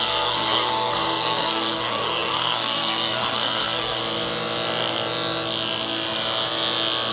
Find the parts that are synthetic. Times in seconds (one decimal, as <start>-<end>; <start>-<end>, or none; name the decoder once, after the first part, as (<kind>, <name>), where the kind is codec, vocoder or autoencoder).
0.0-4.0 (codec, SNAC)